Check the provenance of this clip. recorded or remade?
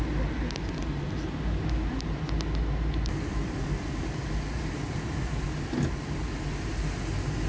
recorded